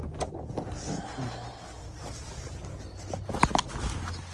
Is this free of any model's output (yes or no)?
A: yes